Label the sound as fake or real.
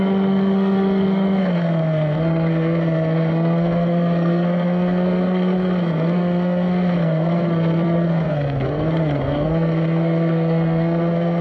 fake